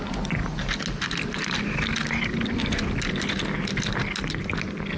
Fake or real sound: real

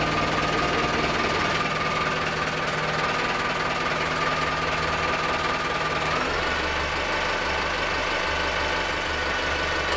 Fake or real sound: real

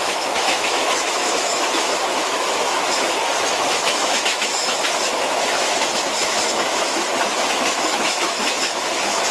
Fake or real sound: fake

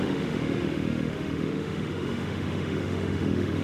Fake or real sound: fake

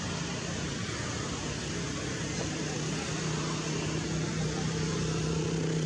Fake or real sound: real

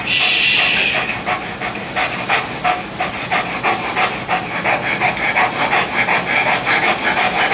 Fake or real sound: real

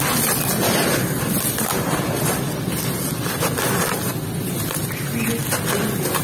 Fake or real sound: real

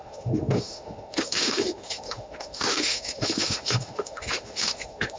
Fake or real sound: fake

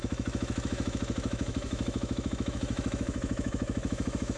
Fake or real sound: fake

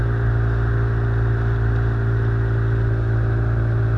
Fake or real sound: real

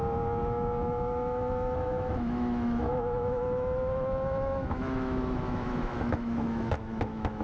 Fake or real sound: fake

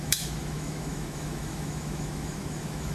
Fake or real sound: fake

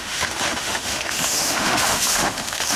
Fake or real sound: fake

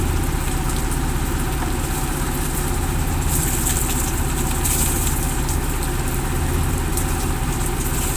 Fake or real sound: real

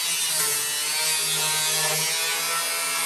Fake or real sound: real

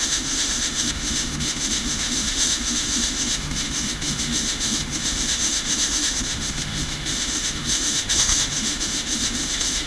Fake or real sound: fake